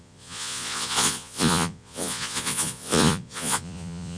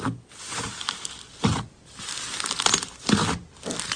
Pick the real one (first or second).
second